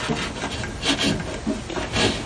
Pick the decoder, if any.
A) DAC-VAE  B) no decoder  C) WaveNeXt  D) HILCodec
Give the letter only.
B